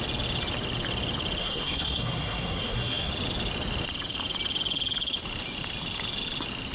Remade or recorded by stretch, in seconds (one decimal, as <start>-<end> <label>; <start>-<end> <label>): 0.0-1.4 recorded; 1.4-3.1 remade; 3.1-6.7 recorded